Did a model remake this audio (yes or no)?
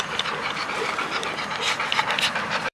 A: yes